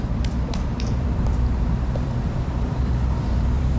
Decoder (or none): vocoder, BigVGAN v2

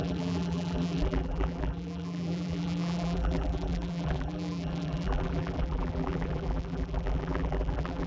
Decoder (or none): vocoder, BigVGAN v2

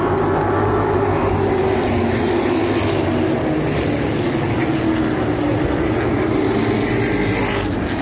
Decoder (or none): none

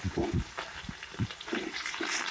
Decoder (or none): vocoder, BigVGAN v2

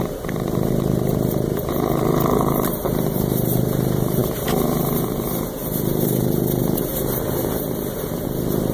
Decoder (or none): vocoder, BigVGAN v2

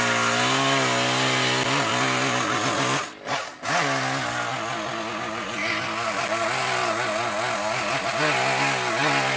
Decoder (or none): none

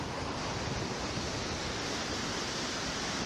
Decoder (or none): none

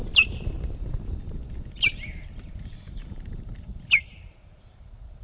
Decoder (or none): vocoder, BigVGAN v2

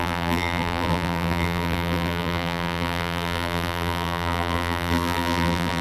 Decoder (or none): vocoder, BigVGAN v2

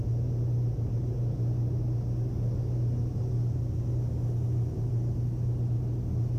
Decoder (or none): none